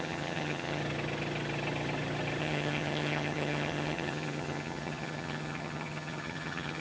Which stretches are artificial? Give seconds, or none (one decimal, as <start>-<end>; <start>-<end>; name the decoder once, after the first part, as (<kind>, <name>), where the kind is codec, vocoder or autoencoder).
0.0-0.8 (vocoder, HiFi-GAN); 2.4-6.8